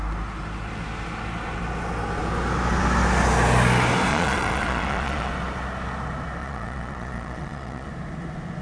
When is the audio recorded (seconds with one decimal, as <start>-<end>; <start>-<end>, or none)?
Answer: 0.0-4.1; 5.3-6.4; 7.9-8.6